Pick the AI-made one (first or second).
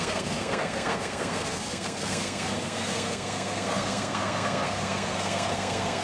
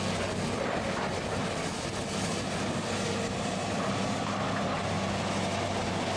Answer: first